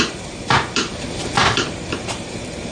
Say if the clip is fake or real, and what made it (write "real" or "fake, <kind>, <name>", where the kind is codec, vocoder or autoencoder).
fake, vocoder, BigVGAN v2